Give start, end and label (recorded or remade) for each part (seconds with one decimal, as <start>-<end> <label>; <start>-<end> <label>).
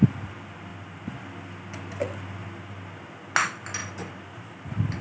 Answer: 0.0-5.0 recorded